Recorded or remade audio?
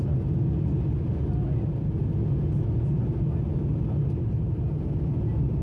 recorded